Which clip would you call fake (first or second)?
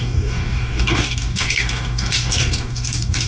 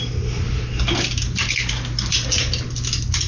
first